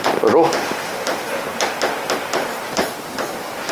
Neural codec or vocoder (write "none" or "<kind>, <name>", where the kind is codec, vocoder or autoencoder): none